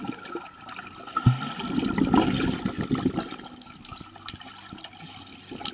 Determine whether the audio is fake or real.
real